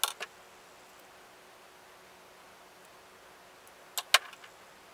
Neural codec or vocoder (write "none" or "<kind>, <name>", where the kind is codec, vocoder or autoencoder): none